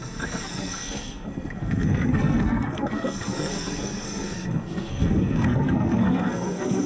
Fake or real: fake